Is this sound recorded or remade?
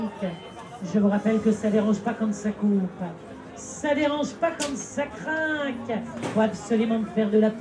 recorded